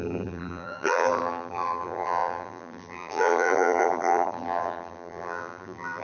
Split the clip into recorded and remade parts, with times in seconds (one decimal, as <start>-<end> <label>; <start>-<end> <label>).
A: 0.0-6.0 remade